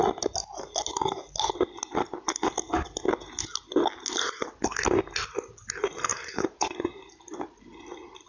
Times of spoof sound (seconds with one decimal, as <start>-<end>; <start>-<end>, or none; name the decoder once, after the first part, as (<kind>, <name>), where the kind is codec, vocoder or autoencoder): 6.1-7.1 (vocoder, Vocos)